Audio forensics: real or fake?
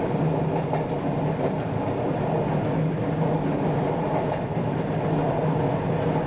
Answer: real